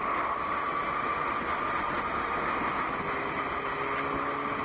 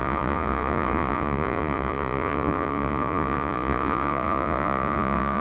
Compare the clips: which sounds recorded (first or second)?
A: first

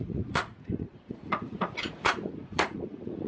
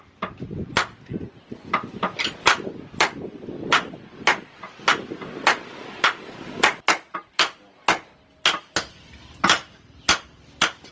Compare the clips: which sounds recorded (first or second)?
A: second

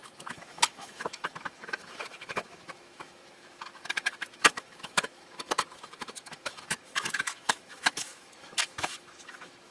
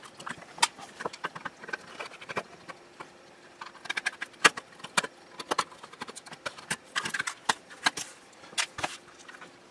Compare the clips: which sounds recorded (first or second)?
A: second